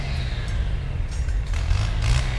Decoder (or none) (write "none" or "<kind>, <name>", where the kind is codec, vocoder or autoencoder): none